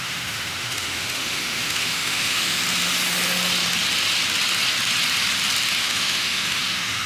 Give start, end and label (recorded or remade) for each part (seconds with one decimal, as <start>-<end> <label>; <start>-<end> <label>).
0.0-2.6 remade; 2.6-5.8 recorded; 5.8-7.1 remade